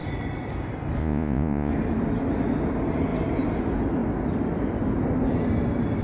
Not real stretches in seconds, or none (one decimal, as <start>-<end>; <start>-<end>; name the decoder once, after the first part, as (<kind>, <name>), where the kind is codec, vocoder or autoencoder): 1.0-1.7 (vocoder, Vocos)